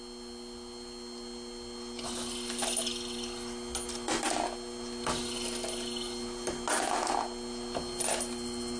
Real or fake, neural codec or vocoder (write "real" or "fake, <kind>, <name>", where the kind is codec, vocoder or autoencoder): real